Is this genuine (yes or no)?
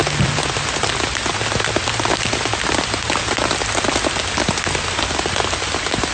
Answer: yes